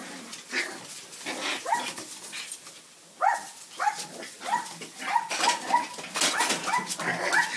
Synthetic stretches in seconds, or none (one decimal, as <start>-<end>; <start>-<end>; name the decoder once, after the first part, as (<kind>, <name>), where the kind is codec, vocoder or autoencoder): none